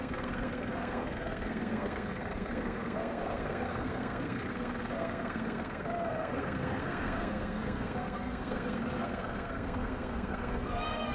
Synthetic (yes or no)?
yes